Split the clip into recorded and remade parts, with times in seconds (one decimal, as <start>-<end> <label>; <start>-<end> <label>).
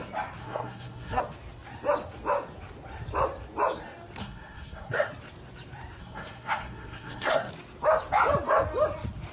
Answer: 0.0-0.4 recorded; 0.4-1.2 remade; 1.2-4.2 recorded; 4.2-5.1 remade; 5.1-6.0 recorded; 6.0-7.5 remade; 7.5-9.3 recorded